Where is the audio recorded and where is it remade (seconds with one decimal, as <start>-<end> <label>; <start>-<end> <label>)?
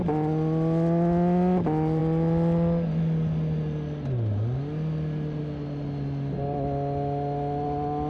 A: 0.0-8.1 recorded